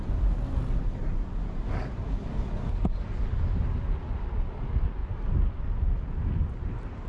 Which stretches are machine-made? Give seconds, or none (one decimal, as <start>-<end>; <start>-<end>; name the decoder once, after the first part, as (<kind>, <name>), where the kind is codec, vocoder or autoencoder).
none